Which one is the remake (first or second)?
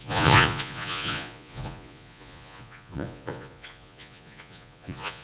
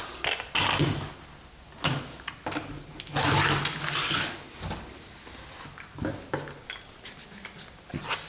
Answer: first